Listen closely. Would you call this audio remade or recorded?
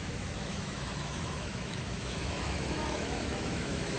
remade